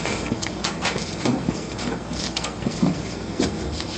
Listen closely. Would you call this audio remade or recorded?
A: remade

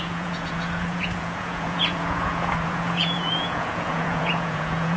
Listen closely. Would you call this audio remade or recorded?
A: remade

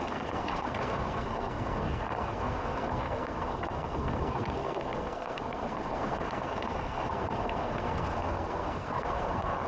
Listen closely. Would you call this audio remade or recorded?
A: remade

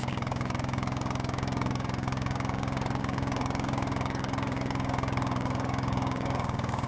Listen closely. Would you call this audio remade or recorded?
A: remade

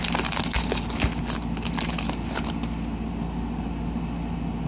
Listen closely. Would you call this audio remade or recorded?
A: recorded